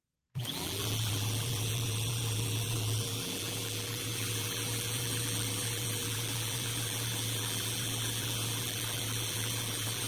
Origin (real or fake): fake